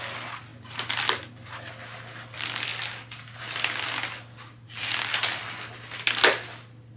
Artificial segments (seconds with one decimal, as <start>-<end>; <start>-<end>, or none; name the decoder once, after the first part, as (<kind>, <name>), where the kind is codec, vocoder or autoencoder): none